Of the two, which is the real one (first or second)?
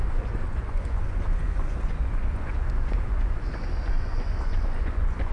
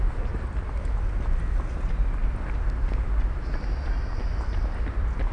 second